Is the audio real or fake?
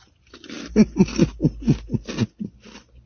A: real